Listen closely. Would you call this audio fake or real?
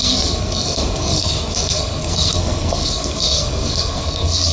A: fake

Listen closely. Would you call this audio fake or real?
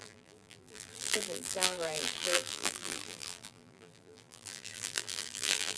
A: fake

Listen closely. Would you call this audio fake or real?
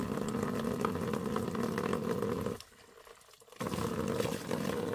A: real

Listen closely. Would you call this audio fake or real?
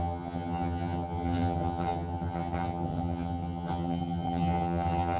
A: fake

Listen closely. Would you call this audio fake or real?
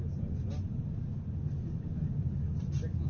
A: real